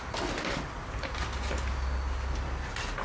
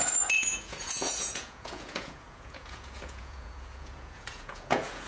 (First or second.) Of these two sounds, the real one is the first